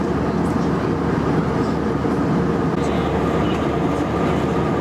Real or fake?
real